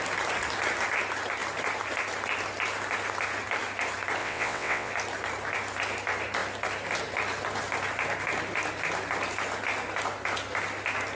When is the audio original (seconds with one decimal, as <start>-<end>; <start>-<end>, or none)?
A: 0.0-4.2; 4.9-11.2